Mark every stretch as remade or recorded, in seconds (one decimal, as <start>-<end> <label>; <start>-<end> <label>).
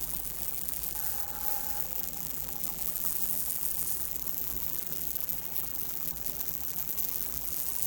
0.0-7.9 remade